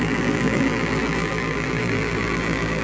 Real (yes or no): no